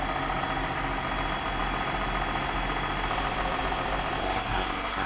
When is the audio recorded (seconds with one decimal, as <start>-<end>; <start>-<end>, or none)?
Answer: 0.0-4.2